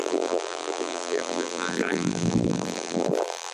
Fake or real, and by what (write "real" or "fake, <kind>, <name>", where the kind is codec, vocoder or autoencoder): fake, vocoder, BigVGAN v2